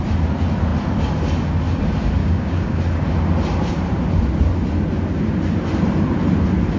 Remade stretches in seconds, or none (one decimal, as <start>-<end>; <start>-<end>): 2.2-2.8